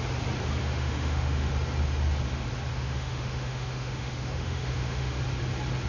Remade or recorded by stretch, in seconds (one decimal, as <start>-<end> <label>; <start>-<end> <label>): 0.0-0.6 recorded; 0.6-1.5 remade; 1.5-2.7 recorded; 2.7-5.2 remade; 5.2-5.9 recorded